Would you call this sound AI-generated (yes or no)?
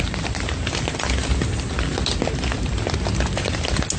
no